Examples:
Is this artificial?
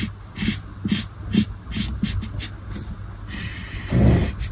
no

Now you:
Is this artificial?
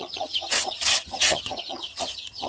yes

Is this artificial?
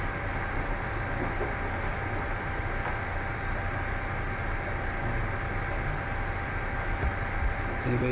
no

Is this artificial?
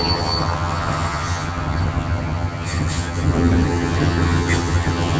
yes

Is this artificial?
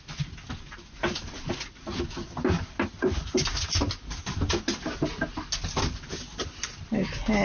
no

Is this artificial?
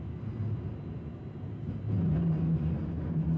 no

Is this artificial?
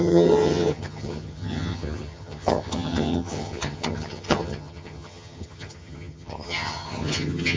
yes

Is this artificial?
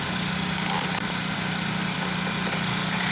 no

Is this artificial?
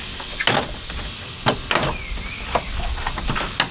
no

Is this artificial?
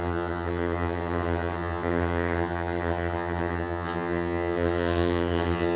yes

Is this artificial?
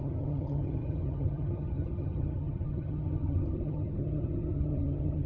yes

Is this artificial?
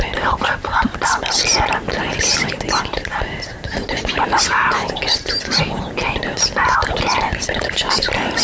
no